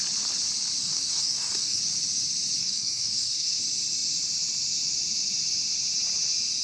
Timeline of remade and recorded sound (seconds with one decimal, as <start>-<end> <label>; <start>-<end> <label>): 0.0-0.8 recorded; 0.8-1.8 remade; 1.8-2.6 recorded; 2.6-3.6 remade; 3.6-6.6 recorded